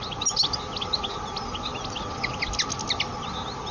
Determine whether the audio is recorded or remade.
recorded